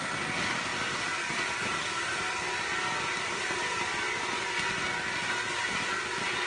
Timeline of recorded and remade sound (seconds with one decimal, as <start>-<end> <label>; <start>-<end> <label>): 0.0-0.7 recorded; 0.7-4.5 remade; 4.5-6.5 recorded